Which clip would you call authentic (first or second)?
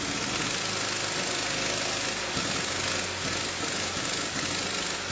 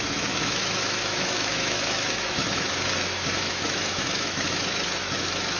first